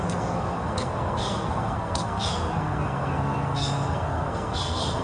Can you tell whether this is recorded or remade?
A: remade